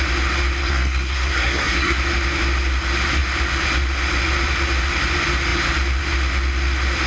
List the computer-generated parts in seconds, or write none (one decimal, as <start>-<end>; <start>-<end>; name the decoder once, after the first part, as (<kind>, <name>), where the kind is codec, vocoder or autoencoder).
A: 0.6-2.0 (codec, SNAC)